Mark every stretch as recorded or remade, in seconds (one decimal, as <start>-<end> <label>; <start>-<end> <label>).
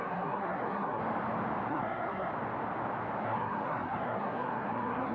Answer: 0.0-1.0 remade; 1.0-1.7 recorded; 1.7-2.3 remade; 2.3-3.2 recorded; 3.2-5.1 remade